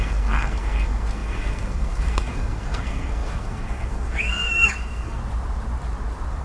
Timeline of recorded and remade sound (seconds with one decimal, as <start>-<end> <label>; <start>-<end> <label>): 0.0-5.2 remade; 5.2-6.4 recorded